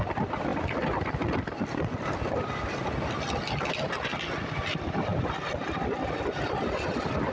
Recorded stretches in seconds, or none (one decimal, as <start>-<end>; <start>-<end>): 0.0-7.3

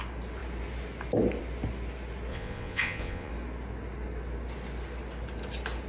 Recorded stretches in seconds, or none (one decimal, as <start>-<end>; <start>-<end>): 0.0-2.3; 3.3-5.9